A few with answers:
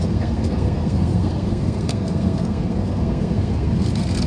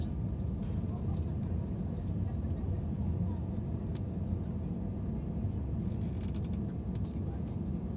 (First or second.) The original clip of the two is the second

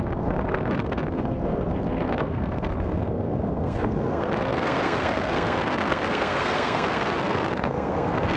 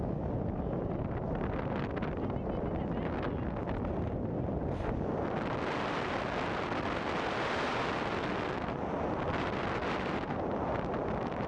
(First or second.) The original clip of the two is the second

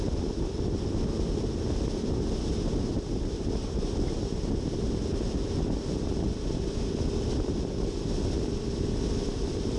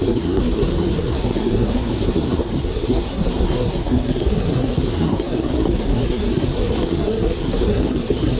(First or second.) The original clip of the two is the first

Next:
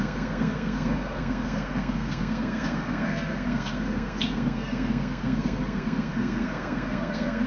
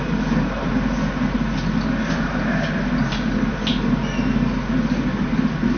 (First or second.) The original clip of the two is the second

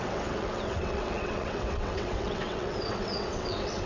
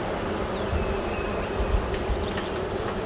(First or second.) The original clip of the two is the second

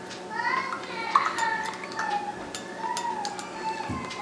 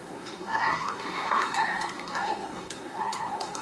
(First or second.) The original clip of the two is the first